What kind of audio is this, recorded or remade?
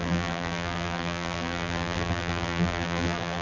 remade